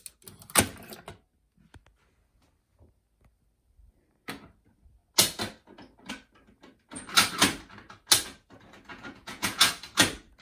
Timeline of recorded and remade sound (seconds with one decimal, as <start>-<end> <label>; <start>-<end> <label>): 0.0-8.9 recorded; 8.9-9.7 remade; 9.7-10.4 recorded